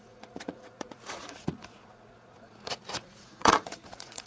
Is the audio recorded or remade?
remade